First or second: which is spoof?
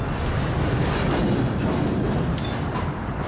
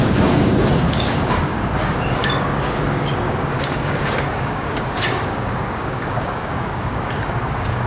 second